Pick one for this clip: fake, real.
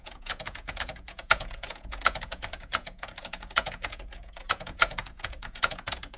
fake